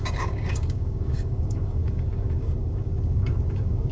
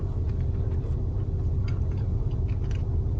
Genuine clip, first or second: second